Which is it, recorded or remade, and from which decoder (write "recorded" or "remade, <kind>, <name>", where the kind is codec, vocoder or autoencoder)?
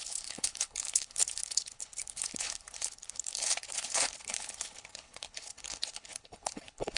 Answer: remade, codec, HILCodec